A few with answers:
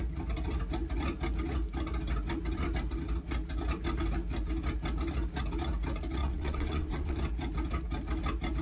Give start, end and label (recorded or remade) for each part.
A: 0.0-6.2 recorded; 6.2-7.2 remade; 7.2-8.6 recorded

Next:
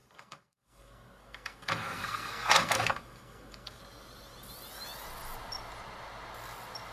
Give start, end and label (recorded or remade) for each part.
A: 0.0-3.8 remade; 3.8-6.9 recorded

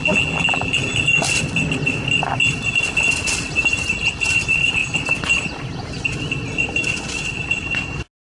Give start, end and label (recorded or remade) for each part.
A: 0.0-0.7 remade; 0.7-8.4 recorded

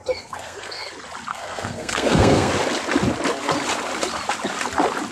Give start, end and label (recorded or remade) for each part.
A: 0.0-0.9 remade; 0.9-1.3 recorded; 1.3-2.5 remade; 2.5-5.1 recorded